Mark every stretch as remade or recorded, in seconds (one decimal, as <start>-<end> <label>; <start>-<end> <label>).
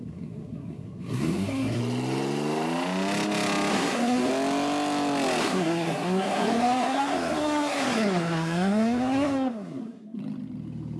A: 0.0-1.8 remade; 1.8-3.7 recorded; 3.7-4.3 remade; 4.3-5.4 recorded; 5.4-10.2 remade; 10.2-11.0 recorded